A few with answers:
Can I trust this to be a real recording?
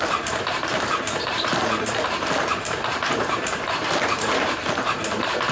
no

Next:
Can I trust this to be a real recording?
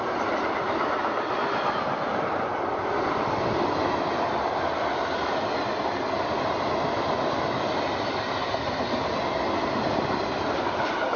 yes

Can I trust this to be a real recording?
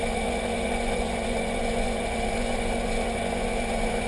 no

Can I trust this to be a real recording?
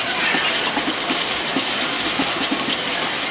yes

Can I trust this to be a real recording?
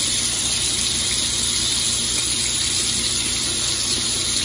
yes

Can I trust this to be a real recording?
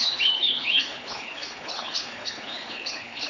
no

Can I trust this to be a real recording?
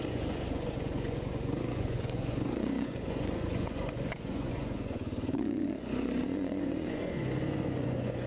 no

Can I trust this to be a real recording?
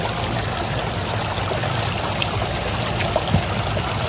yes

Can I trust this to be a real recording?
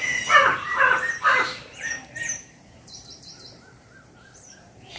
no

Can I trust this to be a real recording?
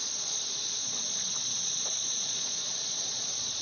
no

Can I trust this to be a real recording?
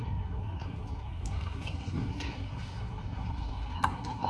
no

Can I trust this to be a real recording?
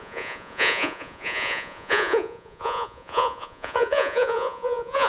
no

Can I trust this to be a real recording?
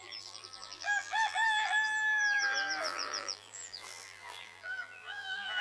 no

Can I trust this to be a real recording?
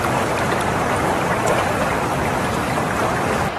no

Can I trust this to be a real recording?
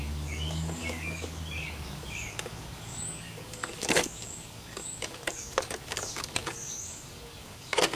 no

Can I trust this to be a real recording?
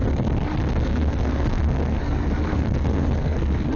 no